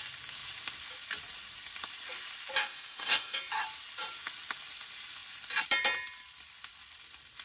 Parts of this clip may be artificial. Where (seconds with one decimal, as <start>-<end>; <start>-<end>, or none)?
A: 2.6-3.4